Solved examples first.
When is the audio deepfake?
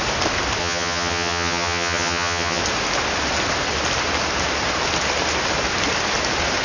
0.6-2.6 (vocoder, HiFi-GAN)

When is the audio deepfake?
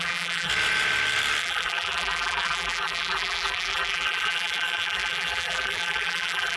0.0-0.5 (vocoder, BigVGAN v2); 1.4-6.6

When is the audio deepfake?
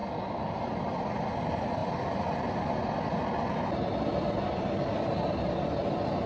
none